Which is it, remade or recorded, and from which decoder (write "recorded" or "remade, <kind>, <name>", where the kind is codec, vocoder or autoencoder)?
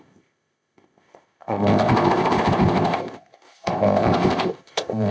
remade, codec, ZipCodec